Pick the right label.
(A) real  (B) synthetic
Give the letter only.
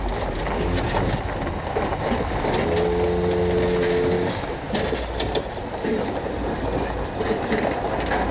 A